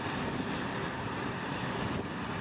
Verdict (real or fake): real